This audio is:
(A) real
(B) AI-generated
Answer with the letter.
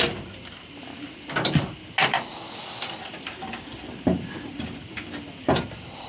A